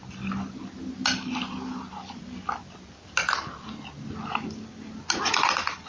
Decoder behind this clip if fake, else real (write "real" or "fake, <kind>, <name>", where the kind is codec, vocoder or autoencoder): real